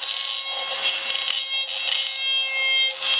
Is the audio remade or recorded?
recorded